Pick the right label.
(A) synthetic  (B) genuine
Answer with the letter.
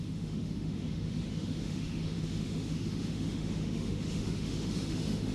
A